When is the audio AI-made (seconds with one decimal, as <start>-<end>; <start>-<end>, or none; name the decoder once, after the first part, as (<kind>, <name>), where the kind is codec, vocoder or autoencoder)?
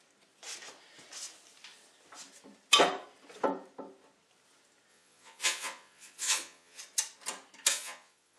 4.9-6.8 (vocoder, Vocos); 7.7-8.4